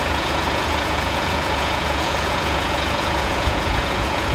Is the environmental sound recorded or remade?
remade